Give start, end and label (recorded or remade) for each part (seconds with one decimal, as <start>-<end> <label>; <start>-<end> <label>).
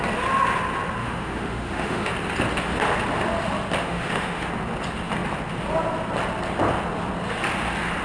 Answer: 0.0-1.0 recorded; 1.0-2.1 remade; 2.1-3.8 recorded; 3.8-4.5 remade; 4.5-8.0 recorded